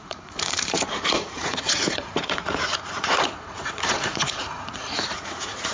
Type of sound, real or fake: fake